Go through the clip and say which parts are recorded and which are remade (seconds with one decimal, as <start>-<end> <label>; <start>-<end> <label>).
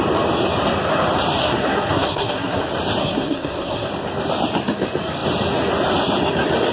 0.0-1.4 recorded; 1.4-2.6 remade; 2.6-3.0 recorded; 3.0-3.9 remade; 3.9-6.7 recorded